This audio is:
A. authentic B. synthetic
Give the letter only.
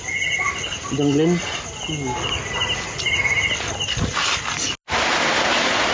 A